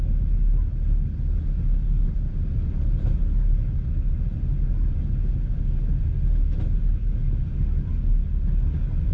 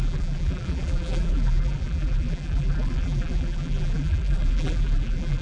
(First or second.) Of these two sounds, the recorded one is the first